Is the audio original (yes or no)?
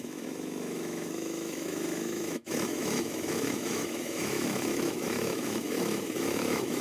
no